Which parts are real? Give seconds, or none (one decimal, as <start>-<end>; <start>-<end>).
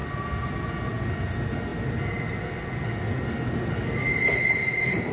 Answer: 0.0-5.1